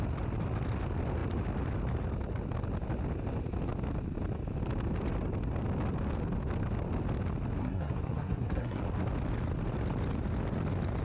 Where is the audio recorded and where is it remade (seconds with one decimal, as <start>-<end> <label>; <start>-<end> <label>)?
0.0-7.6 recorded; 7.6-8.8 remade; 8.8-11.0 recorded

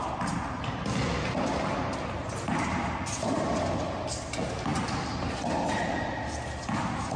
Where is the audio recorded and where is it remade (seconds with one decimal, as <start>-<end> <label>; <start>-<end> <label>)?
0.0-7.2 recorded

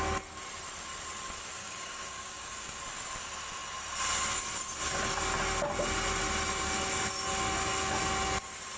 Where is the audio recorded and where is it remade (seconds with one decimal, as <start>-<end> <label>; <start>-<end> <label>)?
0.0-1.6 recorded; 1.6-2.8 remade; 2.8-8.8 recorded

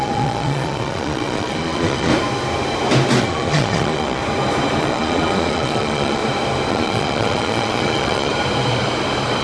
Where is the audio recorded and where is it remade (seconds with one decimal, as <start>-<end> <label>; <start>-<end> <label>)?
0.0-2.1 remade; 2.1-3.2 recorded; 3.2-4.2 remade; 4.2-4.8 recorded; 4.8-6.2 remade; 6.2-6.7 recorded; 6.7-8.3 remade; 8.3-9.4 recorded

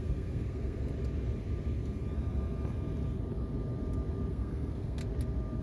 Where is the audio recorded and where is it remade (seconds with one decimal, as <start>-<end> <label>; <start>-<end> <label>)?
0.0-0.9 remade; 0.9-4.3 recorded; 4.3-5.0 remade; 5.0-5.6 recorded

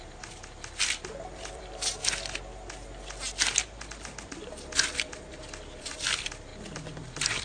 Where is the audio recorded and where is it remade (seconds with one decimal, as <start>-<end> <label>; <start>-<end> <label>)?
0.0-2.0 remade; 2.0-5.8 recorded; 5.8-6.5 remade; 6.5-7.4 recorded

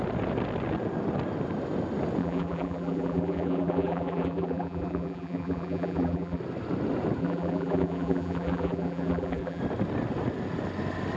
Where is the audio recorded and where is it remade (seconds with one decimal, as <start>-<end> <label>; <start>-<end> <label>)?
0.0-2.2 recorded; 2.2-6.4 remade; 6.4-7.2 recorded; 7.2-9.6 remade; 9.6-11.2 recorded